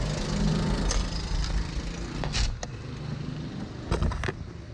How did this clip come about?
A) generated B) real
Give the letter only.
B